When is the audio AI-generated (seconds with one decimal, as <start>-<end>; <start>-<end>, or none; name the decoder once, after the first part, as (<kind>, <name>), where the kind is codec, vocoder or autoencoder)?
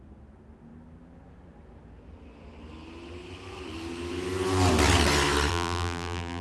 5.5-6.4 (vocoder, BigVGAN v2)